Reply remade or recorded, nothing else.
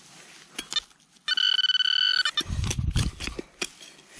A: recorded